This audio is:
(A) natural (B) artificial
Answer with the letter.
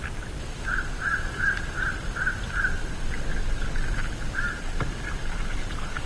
A